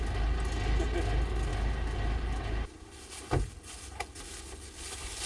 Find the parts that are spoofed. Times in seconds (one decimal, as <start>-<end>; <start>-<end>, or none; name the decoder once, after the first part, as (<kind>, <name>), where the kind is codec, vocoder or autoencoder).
none